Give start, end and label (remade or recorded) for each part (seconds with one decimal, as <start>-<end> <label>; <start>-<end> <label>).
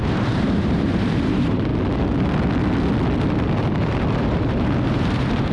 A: 0.0-1.7 remade; 1.7-3.6 recorded; 3.6-5.5 remade